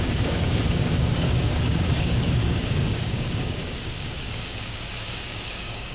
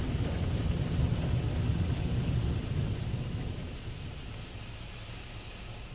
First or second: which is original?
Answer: second